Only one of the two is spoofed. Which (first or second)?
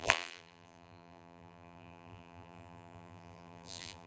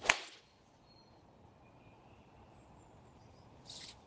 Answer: first